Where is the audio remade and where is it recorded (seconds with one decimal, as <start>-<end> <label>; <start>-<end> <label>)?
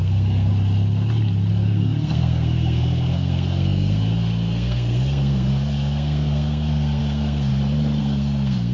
0.0-0.5 remade; 0.5-1.5 recorded; 1.5-7.5 remade; 7.5-8.0 recorded; 8.0-8.7 remade